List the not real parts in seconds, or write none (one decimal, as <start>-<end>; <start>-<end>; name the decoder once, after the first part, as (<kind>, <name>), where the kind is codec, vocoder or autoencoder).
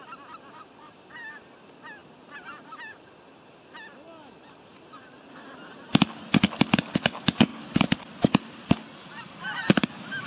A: 7.5-9.9 (vocoder, BigVGAN v2)